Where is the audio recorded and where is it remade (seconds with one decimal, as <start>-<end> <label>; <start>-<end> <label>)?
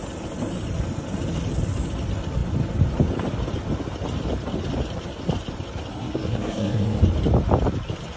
0.0-5.9 recorded; 5.9-7.0 remade; 7.0-8.2 recorded